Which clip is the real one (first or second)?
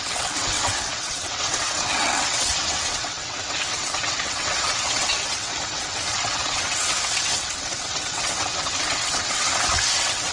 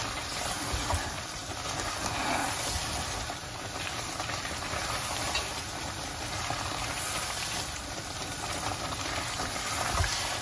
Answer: second